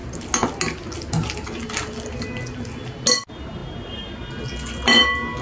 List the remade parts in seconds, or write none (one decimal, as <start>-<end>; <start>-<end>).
none